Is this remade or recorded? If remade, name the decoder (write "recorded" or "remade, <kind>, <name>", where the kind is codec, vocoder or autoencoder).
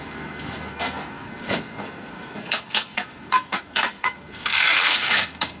remade, codec, SNAC